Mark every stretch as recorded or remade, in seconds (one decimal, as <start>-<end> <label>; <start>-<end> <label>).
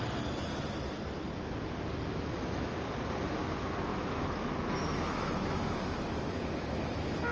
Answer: 0.0-3.9 recorded; 3.9-7.3 remade